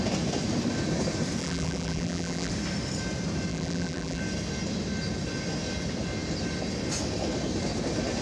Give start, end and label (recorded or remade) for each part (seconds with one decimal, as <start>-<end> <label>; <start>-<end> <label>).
0.0-1.4 recorded; 1.4-2.5 remade; 2.5-3.5 recorded; 3.5-4.2 remade; 4.2-8.2 recorded